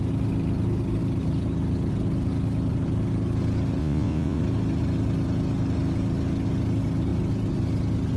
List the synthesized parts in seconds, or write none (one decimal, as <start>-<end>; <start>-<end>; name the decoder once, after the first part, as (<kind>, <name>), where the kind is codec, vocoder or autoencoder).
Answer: 3.8-4.4 (vocoder, Vocos)